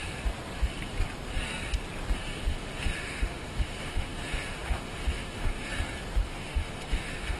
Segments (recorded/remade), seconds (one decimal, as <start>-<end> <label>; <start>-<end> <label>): 0.0-2.5 recorded; 2.5-5.7 remade; 5.7-6.2 recorded; 6.2-7.4 remade